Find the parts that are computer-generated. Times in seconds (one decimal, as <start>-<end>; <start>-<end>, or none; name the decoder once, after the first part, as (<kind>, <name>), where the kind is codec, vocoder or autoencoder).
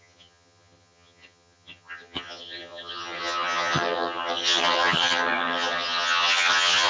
0.0-6.9 (vocoder, HiFi-GAN)